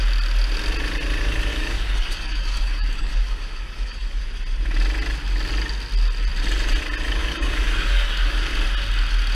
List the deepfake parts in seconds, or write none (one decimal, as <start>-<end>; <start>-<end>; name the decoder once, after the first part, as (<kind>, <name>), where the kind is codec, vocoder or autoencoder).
1.5-4.2 (codec, DAC); 7.2-8.5